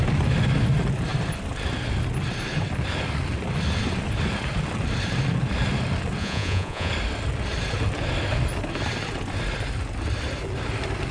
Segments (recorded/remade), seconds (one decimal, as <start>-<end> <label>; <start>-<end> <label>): 0.0-6.2 recorded; 6.2-6.9 remade; 6.9-11.1 recorded